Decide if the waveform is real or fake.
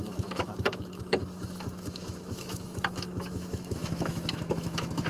fake